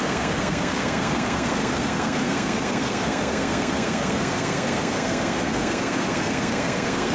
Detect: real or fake fake